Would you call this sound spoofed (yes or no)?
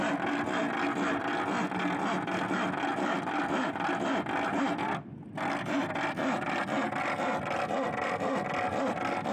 no